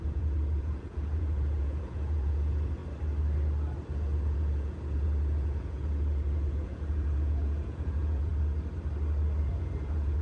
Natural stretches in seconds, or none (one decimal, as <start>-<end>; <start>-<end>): 2.8-3.9; 8.3-9.4

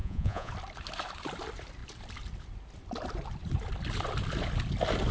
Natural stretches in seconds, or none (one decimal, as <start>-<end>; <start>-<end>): 0.5-5.1

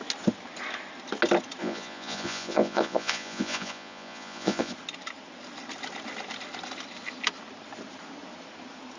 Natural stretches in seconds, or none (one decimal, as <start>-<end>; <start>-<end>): 0.0-1.6; 4.7-9.0

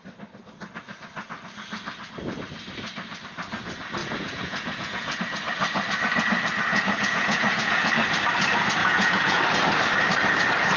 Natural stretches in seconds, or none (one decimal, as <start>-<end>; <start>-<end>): 0.0-4.0; 5.2-6.7; 7.9-8.8; 9.4-10.8

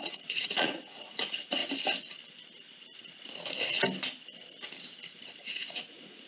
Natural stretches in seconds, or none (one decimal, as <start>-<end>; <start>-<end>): 1.6-5.4

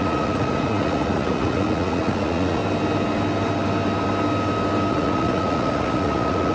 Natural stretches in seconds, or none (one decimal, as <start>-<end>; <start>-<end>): 2.6-4.9

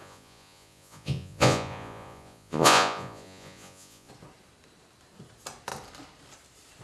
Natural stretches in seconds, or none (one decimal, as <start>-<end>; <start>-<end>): 4.1-6.8

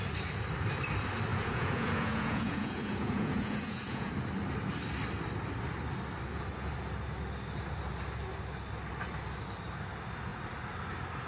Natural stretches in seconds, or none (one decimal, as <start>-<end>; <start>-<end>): 0.0-1.3; 4.1-11.3